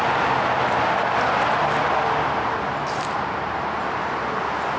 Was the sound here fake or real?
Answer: real